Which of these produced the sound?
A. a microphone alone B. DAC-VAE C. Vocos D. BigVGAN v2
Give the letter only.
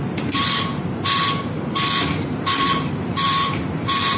D